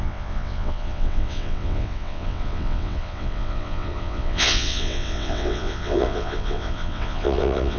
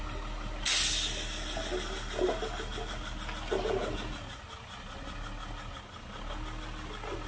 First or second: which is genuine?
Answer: second